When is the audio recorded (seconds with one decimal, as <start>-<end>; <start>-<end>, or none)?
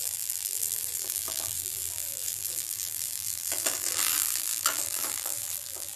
none